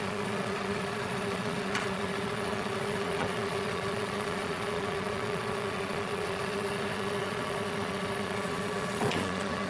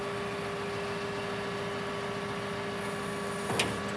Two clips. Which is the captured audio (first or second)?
second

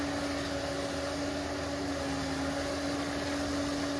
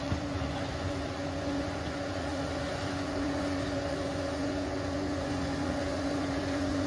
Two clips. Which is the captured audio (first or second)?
first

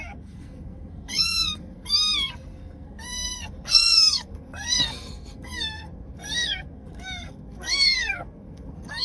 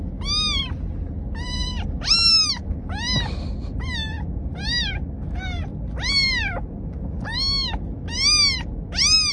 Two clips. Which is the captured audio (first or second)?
second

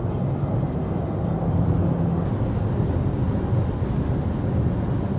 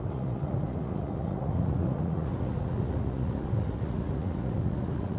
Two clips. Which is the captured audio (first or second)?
first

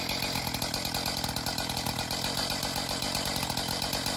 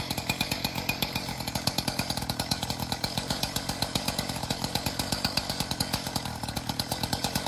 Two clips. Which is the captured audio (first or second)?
first